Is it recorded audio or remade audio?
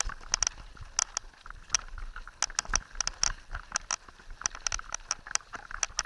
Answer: recorded